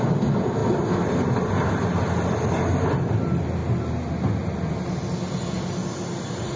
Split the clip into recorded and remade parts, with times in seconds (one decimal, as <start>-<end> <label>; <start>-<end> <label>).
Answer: 0.0-6.6 recorded